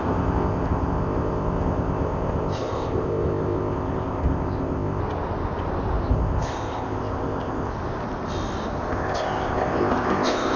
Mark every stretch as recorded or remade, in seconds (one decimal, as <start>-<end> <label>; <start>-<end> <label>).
0.0-5.0 remade; 5.0-6.1 recorded; 6.1-7.7 remade; 7.7-8.9 recorded; 8.9-10.6 remade